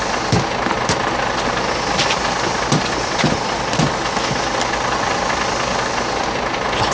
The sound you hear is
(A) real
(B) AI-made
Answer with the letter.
A